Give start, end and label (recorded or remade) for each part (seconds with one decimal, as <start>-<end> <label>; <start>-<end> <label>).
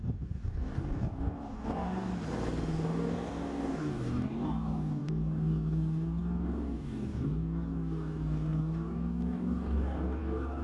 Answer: 0.0-2.1 remade; 2.1-2.7 recorded; 2.7-10.6 remade